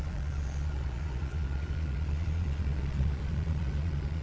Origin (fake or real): fake